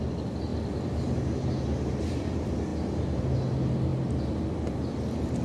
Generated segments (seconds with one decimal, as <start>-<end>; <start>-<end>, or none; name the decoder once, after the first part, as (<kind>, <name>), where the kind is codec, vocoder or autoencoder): none